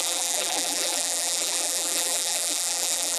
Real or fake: fake